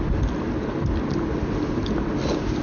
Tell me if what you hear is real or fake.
real